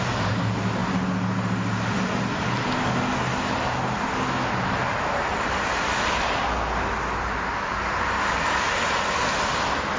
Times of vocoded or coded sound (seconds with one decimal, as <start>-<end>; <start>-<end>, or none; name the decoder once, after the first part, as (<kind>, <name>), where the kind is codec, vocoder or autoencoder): none